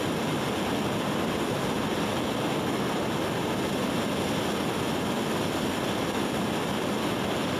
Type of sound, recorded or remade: recorded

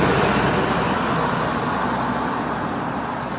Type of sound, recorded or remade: recorded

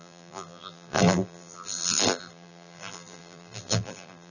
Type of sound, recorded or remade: remade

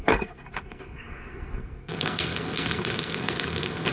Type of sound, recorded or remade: remade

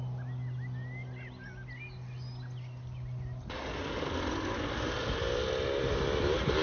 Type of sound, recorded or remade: recorded